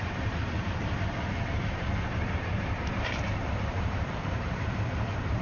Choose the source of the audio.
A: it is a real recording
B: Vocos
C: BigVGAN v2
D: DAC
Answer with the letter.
C